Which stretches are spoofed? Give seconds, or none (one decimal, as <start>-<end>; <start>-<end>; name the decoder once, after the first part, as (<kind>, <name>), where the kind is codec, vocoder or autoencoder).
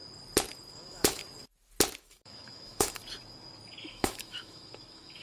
0.7-1.2 (autoencoder, DAC-VAE); 2.0-3.0; 3.8-5.2